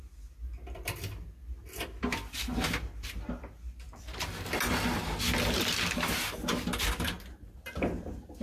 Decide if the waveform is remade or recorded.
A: recorded